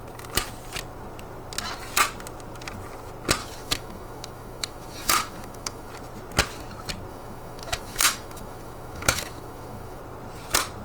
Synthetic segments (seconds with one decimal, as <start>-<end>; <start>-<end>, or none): 3.4-5.9; 7.1-10.0